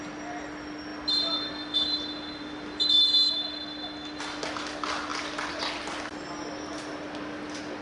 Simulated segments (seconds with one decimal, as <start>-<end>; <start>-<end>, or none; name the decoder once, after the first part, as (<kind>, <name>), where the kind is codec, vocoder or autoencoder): none